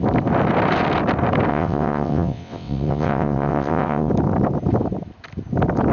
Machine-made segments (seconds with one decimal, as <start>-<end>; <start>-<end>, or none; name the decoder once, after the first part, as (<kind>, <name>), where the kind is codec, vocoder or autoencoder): 1.5-4.1 (vocoder, WaveNeXt)